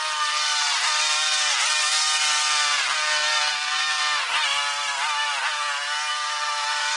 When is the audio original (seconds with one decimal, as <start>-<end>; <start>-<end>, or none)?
0.0-3.5; 4.0-7.0